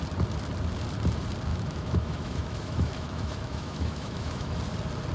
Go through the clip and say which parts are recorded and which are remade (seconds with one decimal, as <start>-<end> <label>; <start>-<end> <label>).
0.0-1.5 recorded; 1.5-4.6 remade; 4.6-5.1 recorded